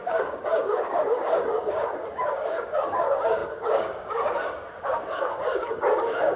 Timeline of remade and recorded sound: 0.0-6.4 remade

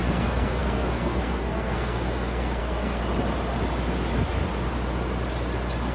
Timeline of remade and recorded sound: 0.0-3.0 remade; 3.0-5.9 recorded

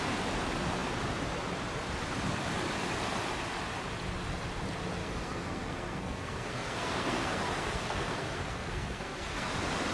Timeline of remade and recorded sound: 0.0-5.0 recorded; 5.0-9.5 remade; 9.5-9.9 recorded

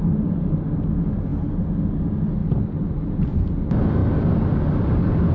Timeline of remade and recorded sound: 0.0-5.3 recorded

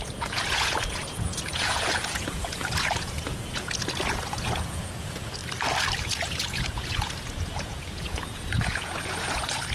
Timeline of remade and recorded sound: 0.0-5.4 remade; 5.4-6.0 recorded; 6.0-9.7 remade